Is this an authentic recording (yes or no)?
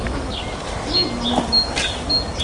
yes